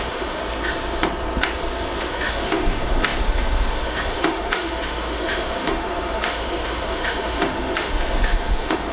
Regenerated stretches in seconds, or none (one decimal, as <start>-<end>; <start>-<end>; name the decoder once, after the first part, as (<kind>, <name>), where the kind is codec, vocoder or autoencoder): 0.0-0.4 (autoencoder, DAC-VAE); 2.0-8.9